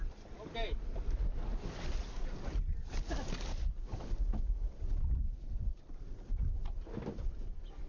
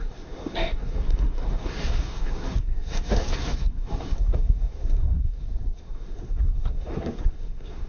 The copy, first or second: second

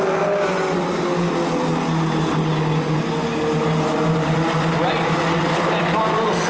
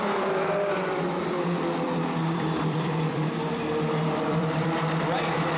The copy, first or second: second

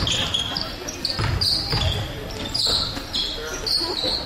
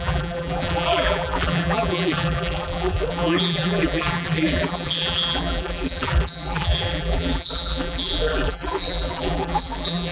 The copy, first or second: second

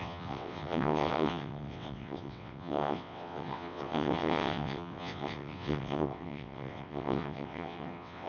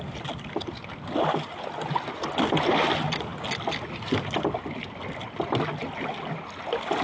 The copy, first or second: first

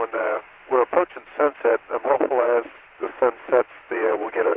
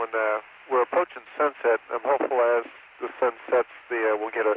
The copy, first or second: first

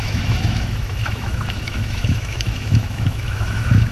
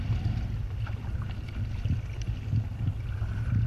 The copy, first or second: first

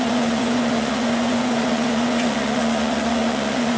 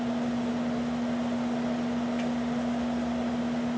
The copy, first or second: first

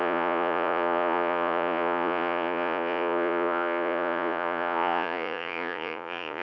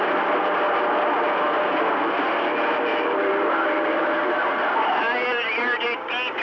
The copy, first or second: first